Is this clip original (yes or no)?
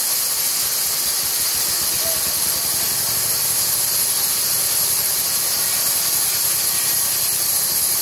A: yes